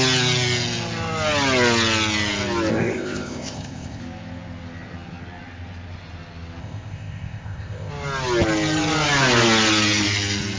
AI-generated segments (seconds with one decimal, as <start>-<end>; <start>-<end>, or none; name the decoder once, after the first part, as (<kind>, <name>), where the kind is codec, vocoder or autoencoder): 2.7-4.0 (codec, ZipCodec); 6.6-7.9